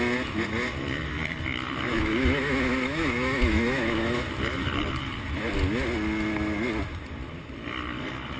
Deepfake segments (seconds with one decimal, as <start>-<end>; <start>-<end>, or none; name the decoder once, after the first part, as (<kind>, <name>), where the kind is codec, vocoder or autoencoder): 1.9-4.3 (autoencoder, DAC-VAE)